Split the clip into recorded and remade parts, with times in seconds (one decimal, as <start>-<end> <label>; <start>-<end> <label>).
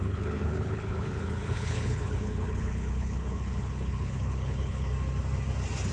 0.0-4.9 remade; 4.9-5.9 recorded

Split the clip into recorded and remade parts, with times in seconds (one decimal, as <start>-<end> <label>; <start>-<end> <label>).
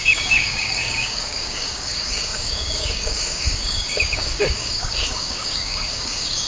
0.0-6.5 remade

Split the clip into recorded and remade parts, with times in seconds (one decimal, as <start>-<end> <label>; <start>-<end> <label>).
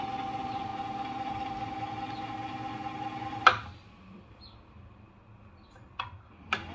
0.0-6.7 recorded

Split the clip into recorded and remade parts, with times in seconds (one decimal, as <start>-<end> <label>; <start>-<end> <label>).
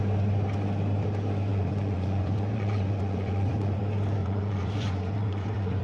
0.0-1.5 recorded; 1.5-3.8 remade; 3.8-4.2 recorded; 4.2-5.8 remade